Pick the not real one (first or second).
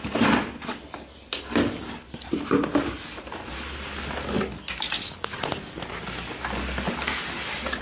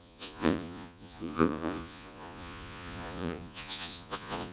second